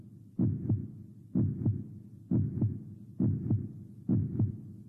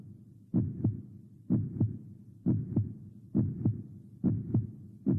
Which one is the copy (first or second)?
second